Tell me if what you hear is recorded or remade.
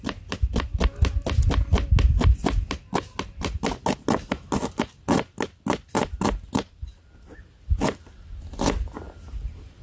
recorded